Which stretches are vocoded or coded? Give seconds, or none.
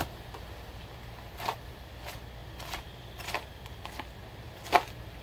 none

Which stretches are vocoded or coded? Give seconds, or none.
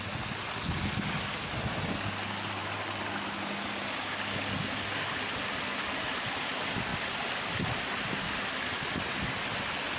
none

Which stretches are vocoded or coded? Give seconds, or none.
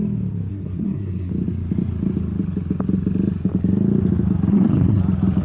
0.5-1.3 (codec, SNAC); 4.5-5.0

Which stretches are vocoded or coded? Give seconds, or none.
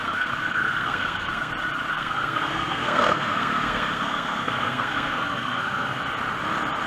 0.0-1.5 (codec, SNAC); 1.9-6.0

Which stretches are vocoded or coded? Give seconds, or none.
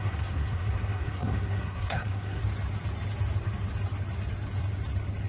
0.0-2.4 (codec, SNAC)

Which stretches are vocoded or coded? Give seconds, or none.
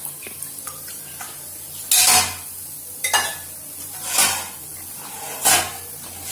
none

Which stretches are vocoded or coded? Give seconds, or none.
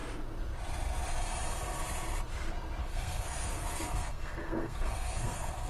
2.8-5.7 (codec, SNAC)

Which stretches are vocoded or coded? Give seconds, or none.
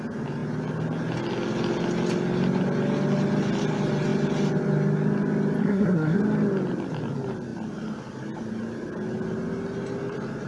5.6-6.2 (codec, SNAC)